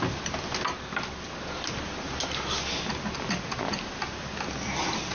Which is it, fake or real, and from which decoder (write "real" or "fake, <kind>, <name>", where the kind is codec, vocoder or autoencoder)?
real